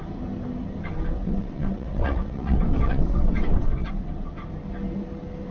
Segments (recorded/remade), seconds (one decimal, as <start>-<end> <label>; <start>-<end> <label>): 0.0-1.2 recorded; 1.2-3.9 remade; 3.9-5.5 recorded